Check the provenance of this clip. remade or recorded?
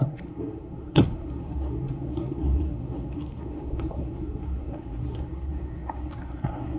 remade